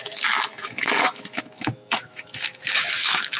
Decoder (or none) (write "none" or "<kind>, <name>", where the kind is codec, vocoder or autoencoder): autoencoder, DAC-VAE